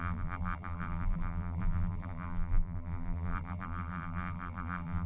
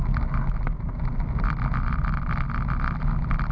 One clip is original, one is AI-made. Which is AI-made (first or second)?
first